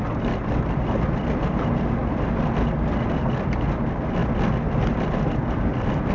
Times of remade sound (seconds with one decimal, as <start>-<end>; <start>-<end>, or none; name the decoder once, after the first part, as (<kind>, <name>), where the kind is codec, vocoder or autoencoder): none